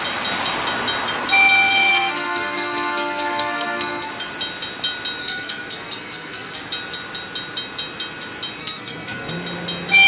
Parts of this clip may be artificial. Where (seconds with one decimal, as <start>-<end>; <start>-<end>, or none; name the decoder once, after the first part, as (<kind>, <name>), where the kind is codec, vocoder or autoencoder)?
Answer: 1.9-4.1 (codec, SNAC); 5.2-6.6; 8.6-9.3